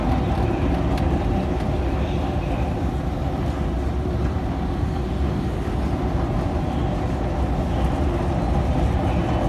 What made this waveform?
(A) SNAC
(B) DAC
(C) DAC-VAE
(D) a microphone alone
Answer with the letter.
D